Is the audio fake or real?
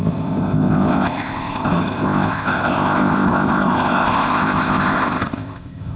fake